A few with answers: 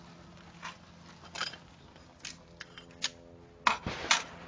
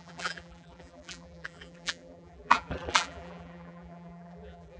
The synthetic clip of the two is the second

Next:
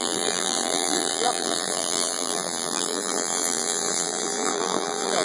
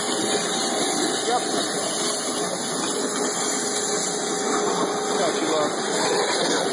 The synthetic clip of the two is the first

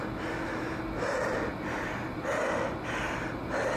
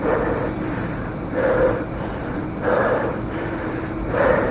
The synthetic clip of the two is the second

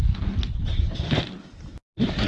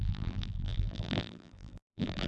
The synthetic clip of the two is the second